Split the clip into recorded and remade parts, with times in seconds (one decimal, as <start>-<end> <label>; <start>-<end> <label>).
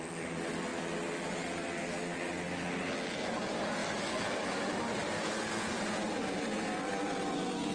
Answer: 0.0-0.7 remade; 0.7-3.2 recorded; 3.2-7.7 remade